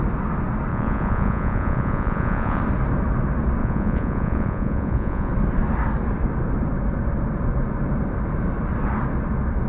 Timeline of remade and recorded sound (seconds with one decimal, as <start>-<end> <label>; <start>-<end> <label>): 0.0-0.7 recorded; 0.7-2.6 remade; 2.6-3.6 recorded; 3.6-5.3 remade; 5.3-9.7 recorded